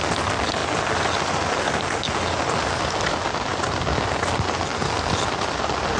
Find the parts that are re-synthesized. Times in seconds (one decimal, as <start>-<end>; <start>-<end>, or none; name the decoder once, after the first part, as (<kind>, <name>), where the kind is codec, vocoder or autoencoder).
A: none